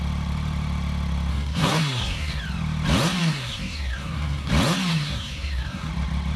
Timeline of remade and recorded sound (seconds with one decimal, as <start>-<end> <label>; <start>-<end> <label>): 0.0-1.3 recorded; 1.3-2.4 remade; 2.4-3.2 recorded; 3.2-4.5 remade; 4.5-4.9 recorded; 4.9-5.9 remade; 5.9-6.4 recorded